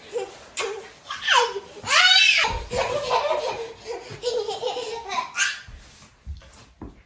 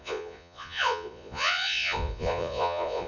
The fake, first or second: second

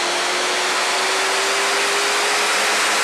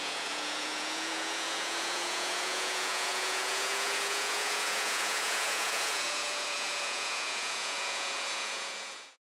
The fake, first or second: second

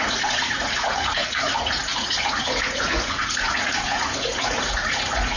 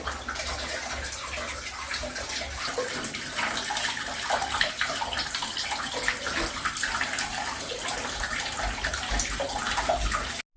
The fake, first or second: first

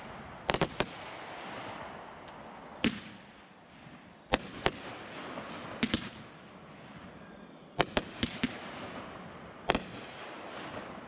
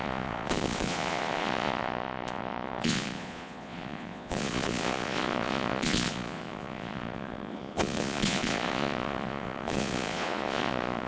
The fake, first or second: second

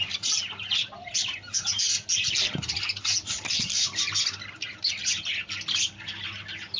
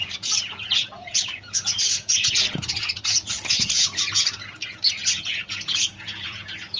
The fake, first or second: second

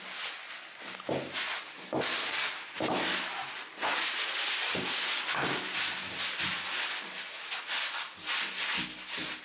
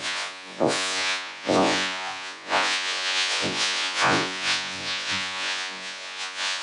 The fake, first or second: second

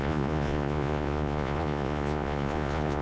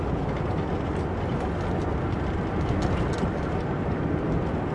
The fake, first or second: first